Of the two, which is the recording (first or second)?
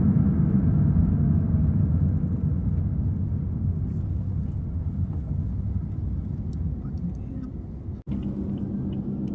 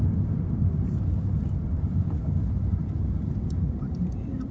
first